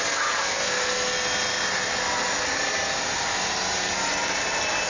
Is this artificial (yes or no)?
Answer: no